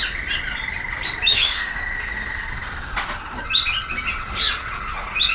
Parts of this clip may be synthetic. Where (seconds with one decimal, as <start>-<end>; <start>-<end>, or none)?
1.3-1.8